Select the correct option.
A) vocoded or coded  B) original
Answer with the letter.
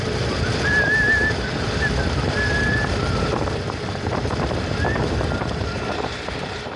A